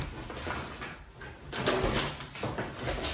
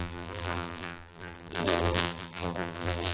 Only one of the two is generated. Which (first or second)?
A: second